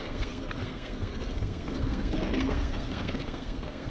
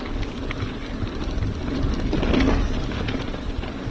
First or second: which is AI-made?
first